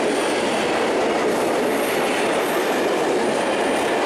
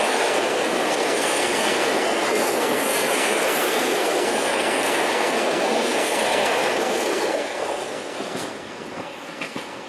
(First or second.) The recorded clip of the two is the first